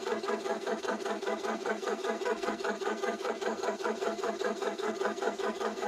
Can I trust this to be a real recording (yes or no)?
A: no